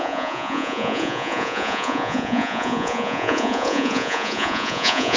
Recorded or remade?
remade